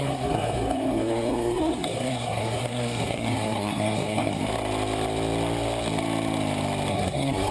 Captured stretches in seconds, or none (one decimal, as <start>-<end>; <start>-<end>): 4.4-6.9